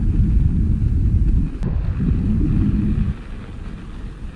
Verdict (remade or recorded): recorded